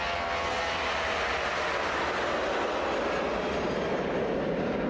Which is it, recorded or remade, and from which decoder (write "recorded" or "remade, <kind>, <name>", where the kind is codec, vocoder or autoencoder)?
recorded